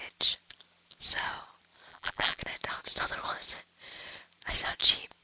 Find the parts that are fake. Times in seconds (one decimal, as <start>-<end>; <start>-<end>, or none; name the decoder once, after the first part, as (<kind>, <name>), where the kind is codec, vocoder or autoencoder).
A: 1.9-2.4 (vocoder, BigVGAN v2)